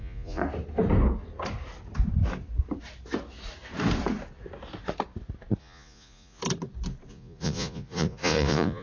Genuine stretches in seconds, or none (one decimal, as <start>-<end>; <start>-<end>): 0.4-5.6; 6.4-7.1